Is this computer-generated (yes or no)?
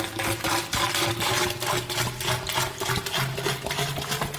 no